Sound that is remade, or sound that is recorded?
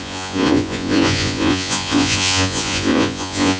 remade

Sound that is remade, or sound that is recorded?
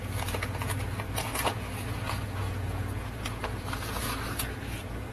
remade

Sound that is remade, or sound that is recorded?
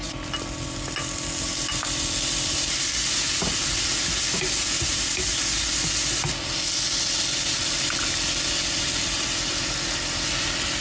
recorded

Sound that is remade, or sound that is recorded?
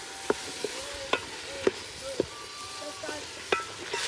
recorded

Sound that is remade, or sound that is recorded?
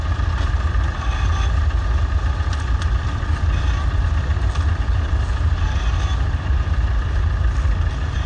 recorded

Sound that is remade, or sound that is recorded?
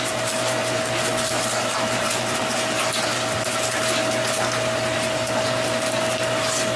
recorded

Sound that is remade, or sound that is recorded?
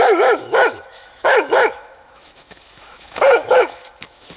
remade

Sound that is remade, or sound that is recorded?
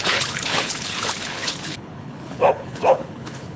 remade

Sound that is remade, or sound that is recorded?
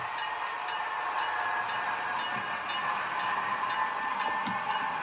recorded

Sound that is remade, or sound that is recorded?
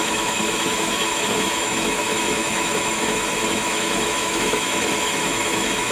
remade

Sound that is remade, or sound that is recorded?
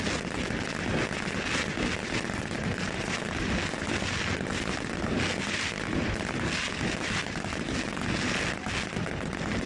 recorded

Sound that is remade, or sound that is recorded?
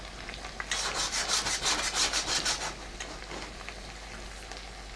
recorded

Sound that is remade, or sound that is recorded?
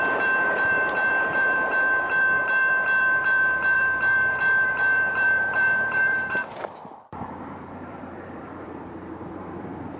remade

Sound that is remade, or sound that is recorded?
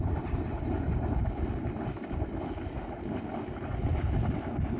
recorded